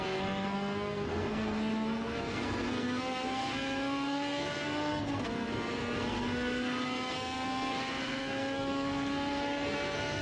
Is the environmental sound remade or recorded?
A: remade